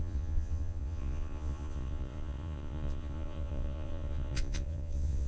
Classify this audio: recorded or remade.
remade